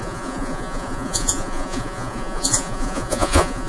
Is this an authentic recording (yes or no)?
no